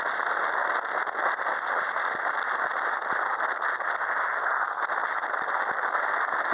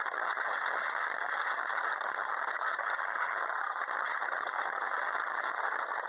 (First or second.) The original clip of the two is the first